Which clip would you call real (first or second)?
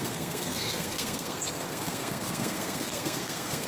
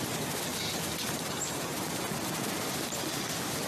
second